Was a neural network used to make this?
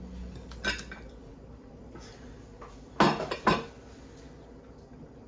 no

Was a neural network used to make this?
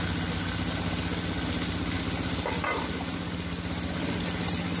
no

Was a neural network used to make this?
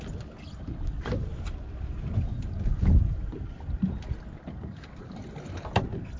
no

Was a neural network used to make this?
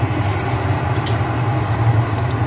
no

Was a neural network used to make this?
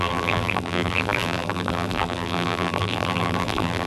yes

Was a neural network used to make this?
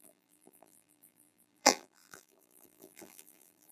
yes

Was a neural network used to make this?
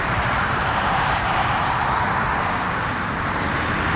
yes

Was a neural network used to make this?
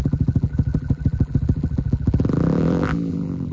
yes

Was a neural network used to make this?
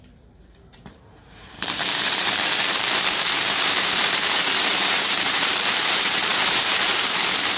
yes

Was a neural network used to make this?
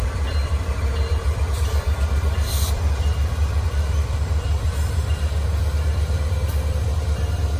yes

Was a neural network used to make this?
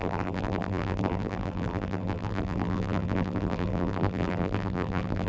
yes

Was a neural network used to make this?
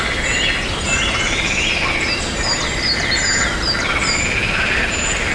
no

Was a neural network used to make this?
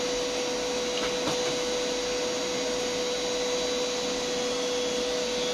no